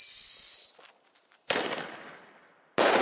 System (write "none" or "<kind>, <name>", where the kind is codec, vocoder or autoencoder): none